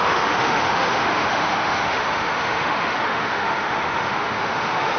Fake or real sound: fake